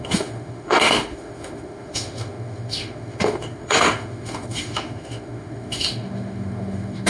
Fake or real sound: fake